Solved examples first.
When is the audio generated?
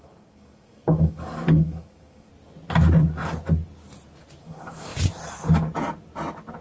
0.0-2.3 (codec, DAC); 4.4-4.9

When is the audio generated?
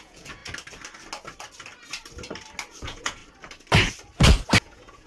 0.0-0.4 (vocoder, Vocos); 2.8-3.2; 4.6-5.1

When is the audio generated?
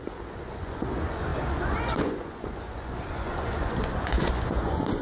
0.0-5.0 (vocoder, Vocos)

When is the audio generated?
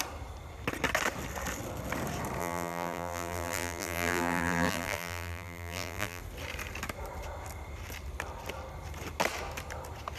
2.4-6.2 (vocoder, BigVGAN v2)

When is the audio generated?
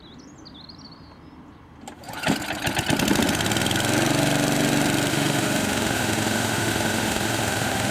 5.1-7.9 (autoencoder, DAC-VAE)